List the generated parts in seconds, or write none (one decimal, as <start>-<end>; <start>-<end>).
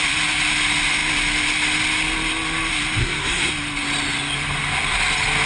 3.0-3.5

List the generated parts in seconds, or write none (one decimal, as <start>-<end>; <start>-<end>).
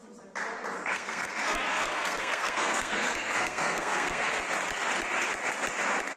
0.8-4.4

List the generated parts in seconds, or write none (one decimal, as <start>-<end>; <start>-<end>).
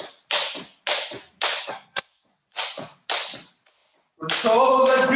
1.7-2.3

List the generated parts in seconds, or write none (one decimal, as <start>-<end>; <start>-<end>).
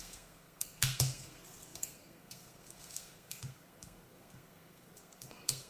0.0-5.7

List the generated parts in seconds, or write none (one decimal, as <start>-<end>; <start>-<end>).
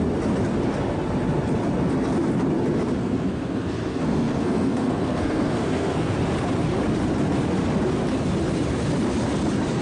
3.0-6.1